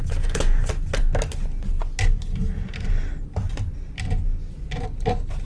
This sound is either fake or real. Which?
real